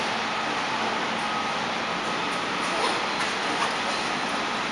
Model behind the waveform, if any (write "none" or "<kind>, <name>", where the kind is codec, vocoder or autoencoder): none